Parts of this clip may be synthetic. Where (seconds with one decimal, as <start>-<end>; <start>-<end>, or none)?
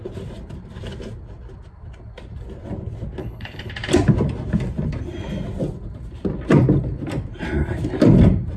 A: 3.2-3.7